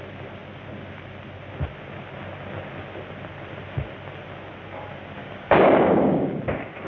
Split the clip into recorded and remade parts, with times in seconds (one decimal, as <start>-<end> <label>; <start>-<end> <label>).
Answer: 0.0-5.2 recorded; 5.2-6.4 remade; 6.4-6.9 recorded